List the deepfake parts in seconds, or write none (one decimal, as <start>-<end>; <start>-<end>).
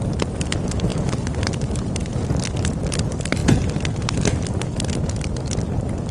0.0-2.0; 2.7-3.4; 4.0-6.1